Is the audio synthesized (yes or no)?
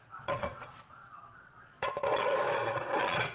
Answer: yes